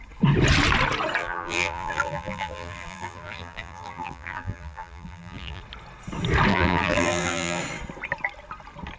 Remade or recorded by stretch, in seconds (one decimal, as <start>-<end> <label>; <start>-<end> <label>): 0.0-1.2 recorded; 1.2-5.6 remade; 5.6-6.5 recorded; 6.5-7.6 remade; 7.6-9.0 recorded